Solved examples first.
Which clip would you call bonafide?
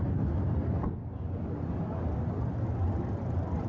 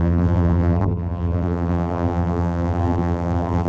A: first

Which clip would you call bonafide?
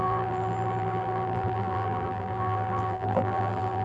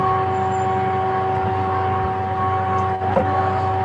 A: second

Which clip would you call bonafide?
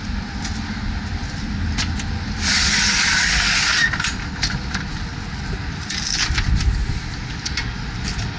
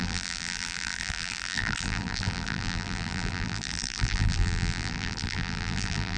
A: first